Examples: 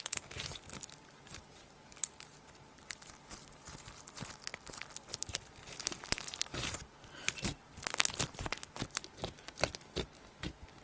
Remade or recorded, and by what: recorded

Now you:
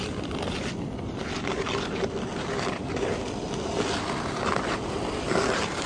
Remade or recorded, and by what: recorded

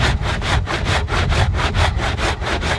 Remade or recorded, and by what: recorded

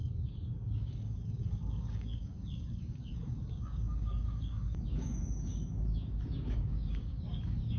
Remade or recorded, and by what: remade, codec, DAC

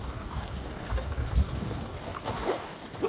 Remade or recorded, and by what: remade, codec, DAC